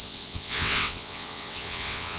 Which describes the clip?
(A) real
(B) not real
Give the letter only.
B